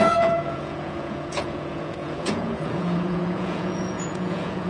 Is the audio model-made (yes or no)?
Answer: yes